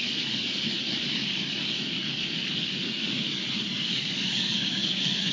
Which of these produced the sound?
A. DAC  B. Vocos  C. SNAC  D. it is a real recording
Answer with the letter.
A